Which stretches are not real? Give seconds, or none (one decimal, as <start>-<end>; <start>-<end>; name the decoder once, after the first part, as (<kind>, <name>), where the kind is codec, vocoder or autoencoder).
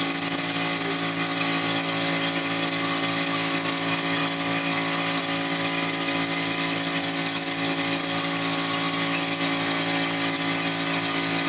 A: none